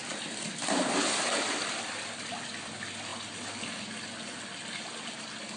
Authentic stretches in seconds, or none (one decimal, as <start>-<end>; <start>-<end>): 0.0-5.6